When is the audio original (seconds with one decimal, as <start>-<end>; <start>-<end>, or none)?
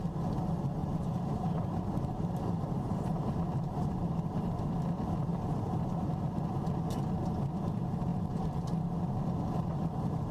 0.0-0.8; 4.6-5.3; 5.9-8.1; 9.1-10.3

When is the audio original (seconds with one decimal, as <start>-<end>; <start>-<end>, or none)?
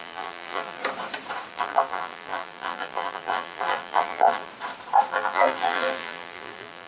0.8-1.5; 4.5-5.1